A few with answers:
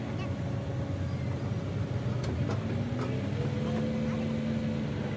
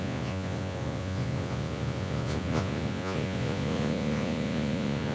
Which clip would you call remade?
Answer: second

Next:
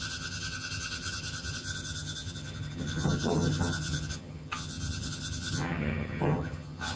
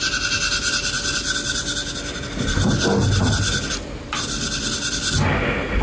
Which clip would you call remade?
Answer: first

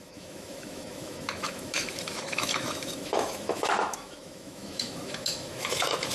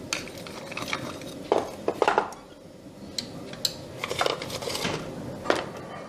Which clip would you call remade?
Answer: first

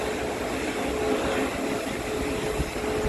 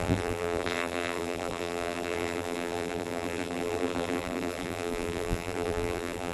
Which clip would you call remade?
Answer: second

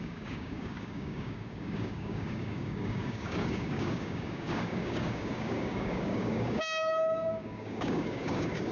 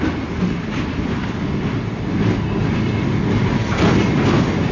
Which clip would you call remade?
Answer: first